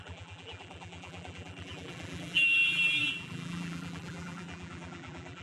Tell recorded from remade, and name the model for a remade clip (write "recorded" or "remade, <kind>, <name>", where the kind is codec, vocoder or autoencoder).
remade, vocoder, BigVGAN v2